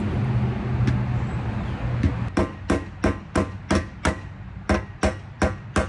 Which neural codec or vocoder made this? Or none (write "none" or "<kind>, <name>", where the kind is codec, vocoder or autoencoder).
none